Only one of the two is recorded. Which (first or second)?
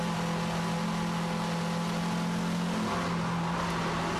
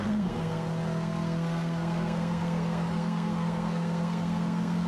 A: first